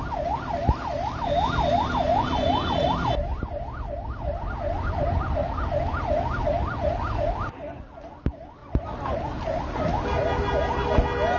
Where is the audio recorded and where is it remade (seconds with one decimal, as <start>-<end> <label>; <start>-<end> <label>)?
0.0-2.1 recorded; 2.1-2.9 remade; 2.9-11.4 recorded